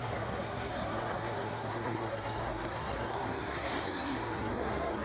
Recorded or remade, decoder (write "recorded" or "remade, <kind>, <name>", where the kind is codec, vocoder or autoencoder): remade, codec, SNAC